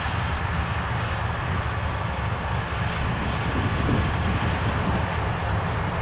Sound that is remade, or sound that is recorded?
recorded